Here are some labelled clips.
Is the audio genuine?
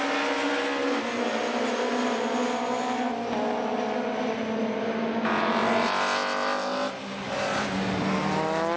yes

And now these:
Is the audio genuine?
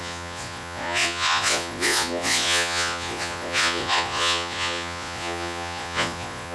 no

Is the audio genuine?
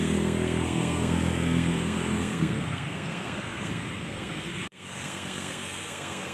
no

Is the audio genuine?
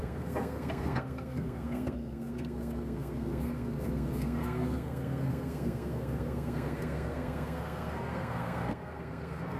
no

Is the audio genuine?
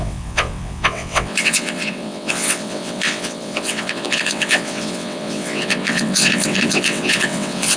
no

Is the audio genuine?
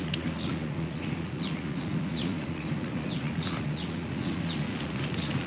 no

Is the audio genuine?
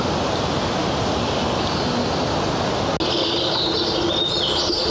yes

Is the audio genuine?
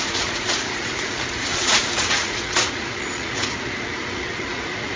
no